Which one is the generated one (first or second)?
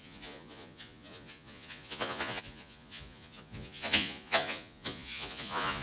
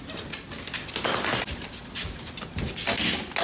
first